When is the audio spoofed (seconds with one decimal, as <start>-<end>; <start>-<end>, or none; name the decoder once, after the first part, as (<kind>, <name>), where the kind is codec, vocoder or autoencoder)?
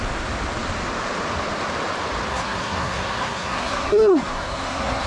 2.3-5.1 (codec, SNAC)